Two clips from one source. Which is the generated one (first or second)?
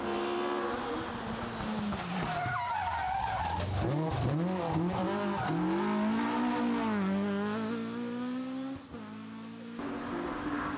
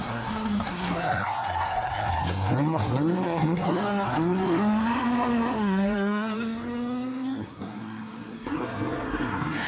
second